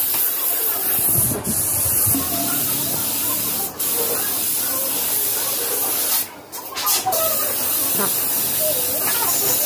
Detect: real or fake real